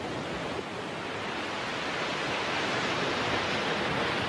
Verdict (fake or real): real